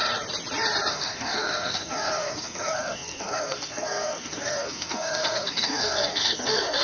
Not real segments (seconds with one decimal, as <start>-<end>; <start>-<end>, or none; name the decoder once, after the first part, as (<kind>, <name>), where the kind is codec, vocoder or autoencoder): 0.9-6.8 (codec, SNAC)